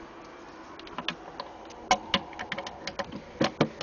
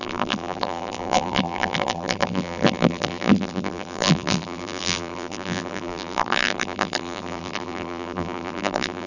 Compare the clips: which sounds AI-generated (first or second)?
second